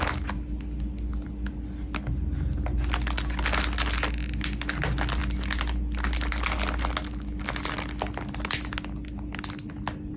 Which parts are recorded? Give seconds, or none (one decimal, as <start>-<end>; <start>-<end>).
0.0-10.2